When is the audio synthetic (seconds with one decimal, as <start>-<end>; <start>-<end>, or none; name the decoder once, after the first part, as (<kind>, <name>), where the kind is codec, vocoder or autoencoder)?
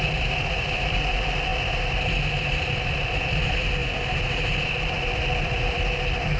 0.0-1.5 (vocoder, BigVGAN v2); 3.0-3.8; 4.7-6.4